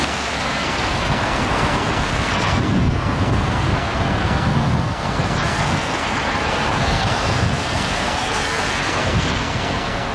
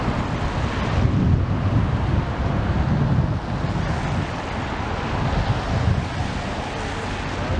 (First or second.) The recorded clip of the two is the second